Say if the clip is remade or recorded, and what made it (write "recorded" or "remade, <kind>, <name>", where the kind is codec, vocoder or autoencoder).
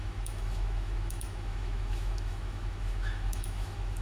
remade, autoencoder, DAC-VAE